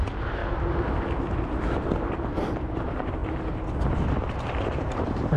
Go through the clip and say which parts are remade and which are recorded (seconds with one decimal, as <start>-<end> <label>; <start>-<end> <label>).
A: 0.0-0.4 remade; 0.4-2.1 recorded; 2.1-3.2 remade; 3.2-4.0 recorded; 4.0-5.4 remade